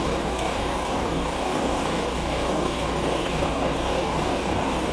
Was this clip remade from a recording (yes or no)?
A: yes